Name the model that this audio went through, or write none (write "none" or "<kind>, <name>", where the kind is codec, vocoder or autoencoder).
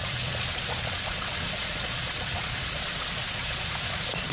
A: vocoder, Vocos